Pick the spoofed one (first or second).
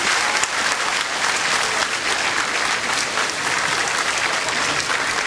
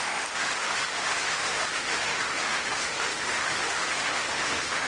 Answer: second